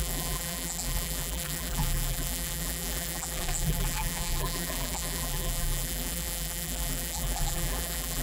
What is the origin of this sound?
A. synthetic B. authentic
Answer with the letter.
A